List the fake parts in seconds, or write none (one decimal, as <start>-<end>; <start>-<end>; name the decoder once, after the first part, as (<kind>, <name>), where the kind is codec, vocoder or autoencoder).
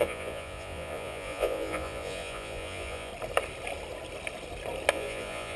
0.0-3.1 (vocoder, Vocos); 4.9-5.6